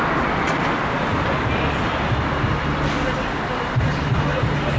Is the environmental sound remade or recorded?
recorded